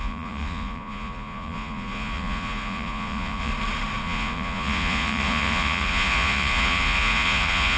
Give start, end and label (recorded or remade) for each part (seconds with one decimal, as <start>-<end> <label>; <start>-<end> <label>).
0.0-3.5 remade; 3.5-4.0 recorded; 4.0-7.8 remade